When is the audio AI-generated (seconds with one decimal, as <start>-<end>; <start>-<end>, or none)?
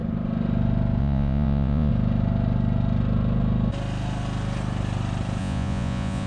1.0-1.9; 5.4-6.3